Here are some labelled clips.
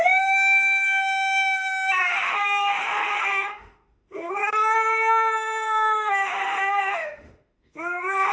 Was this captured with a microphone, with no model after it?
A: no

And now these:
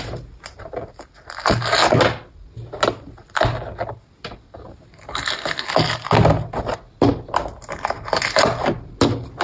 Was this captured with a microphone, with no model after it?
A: yes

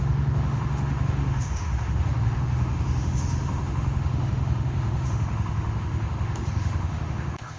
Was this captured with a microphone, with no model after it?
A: no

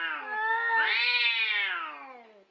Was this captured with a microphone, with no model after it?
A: yes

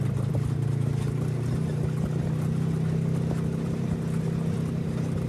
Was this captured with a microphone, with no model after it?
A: yes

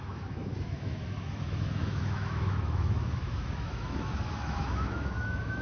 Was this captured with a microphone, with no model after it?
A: no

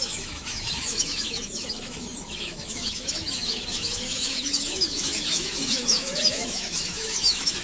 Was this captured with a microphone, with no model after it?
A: no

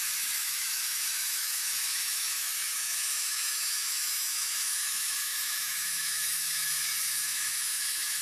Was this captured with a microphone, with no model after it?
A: no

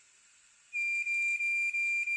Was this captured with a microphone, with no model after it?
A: yes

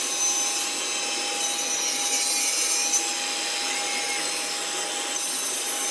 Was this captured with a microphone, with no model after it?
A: yes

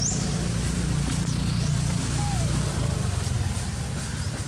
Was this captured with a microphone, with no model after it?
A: yes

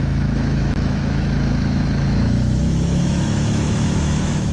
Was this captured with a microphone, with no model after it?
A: no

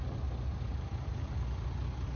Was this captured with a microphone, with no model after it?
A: yes